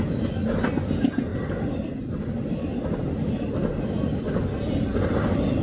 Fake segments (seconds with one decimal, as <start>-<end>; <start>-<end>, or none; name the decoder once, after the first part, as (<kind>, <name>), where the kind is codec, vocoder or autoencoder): none